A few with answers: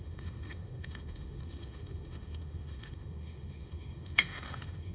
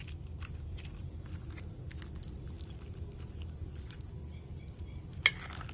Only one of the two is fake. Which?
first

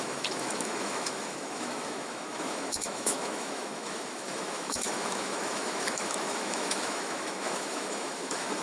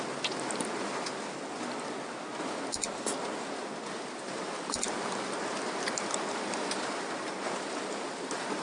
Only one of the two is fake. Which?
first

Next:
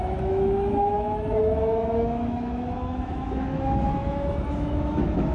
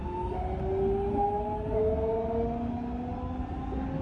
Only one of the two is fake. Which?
first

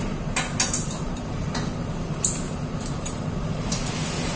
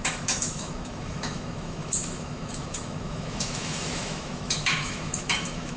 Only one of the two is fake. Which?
second